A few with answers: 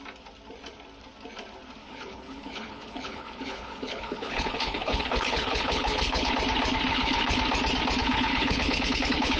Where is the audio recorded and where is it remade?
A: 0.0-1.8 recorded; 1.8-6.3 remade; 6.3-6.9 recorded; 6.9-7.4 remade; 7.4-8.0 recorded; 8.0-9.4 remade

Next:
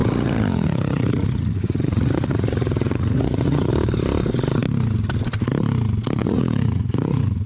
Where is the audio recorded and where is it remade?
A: 0.0-3.7 remade; 3.7-6.2 recorded; 6.2-7.5 remade

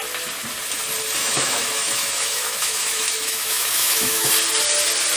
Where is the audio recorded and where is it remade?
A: 0.0-1.2 recorded; 1.2-4.3 remade; 4.3-5.2 recorded